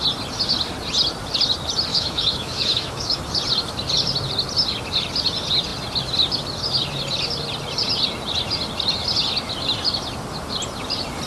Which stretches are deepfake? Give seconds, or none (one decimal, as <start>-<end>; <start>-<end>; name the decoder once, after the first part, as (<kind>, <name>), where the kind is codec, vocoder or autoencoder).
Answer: 1.9-3.2 (autoencoder, DAC-VAE)